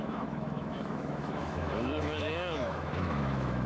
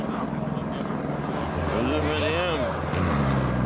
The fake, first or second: first